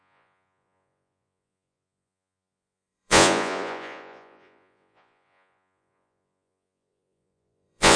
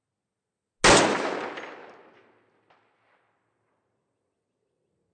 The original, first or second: second